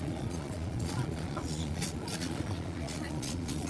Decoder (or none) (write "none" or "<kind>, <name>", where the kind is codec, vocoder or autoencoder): vocoder, Vocos